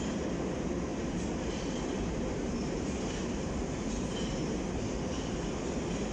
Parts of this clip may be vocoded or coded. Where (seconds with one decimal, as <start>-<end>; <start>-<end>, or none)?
0.9-4.6